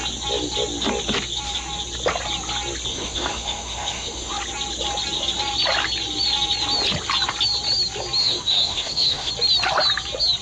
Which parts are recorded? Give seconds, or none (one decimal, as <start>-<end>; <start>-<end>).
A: 0.0-2.9; 4.3-8.2; 9.3-10.4